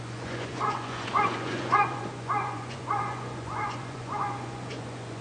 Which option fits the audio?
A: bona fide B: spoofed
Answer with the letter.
B